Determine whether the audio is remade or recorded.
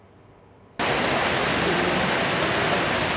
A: recorded